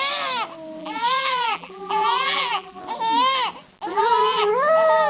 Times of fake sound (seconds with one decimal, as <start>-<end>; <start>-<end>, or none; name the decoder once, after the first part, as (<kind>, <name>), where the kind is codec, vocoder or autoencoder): 0.8-2.8 (vocoder, BigVGAN v2); 3.9-4.5